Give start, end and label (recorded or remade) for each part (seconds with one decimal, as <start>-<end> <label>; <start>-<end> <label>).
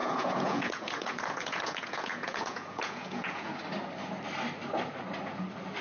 0.0-3.5 remade; 3.5-5.8 recorded